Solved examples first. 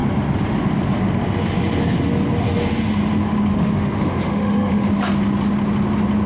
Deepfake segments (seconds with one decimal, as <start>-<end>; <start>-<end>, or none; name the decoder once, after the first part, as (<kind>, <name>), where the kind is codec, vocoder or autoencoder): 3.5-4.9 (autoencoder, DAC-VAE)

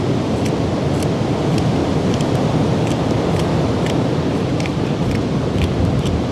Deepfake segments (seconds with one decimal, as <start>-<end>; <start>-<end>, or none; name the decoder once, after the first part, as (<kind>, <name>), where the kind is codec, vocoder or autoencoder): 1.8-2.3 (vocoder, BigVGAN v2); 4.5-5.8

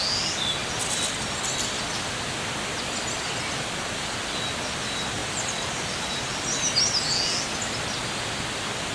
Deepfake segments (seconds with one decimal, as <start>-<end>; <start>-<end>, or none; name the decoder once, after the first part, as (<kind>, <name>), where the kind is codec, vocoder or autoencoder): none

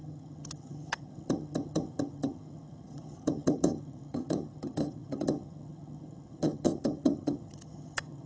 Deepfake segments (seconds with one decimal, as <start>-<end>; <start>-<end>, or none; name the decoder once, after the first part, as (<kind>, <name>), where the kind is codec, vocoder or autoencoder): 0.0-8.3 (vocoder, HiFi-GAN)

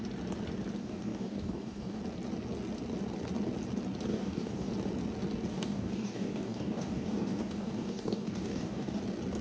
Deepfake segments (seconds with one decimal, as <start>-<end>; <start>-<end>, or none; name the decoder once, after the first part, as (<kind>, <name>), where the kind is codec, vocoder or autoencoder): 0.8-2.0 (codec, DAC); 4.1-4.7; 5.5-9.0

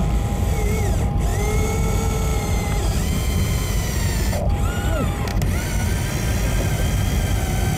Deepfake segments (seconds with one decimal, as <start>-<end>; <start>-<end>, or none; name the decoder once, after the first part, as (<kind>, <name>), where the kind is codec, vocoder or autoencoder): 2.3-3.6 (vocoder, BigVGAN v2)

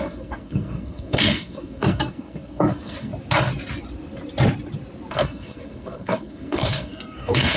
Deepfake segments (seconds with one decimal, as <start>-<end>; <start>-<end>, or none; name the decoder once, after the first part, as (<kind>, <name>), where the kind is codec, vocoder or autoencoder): 0.0-3.1 (codec, SNAC); 5.1-7.6

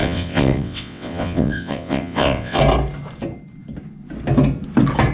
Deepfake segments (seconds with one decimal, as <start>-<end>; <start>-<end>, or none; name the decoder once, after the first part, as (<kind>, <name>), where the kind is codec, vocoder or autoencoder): 0.0-2.6 (vocoder, WaveNeXt)